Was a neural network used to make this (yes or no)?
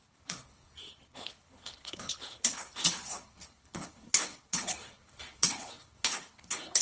yes